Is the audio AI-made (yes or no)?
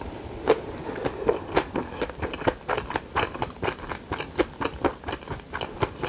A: no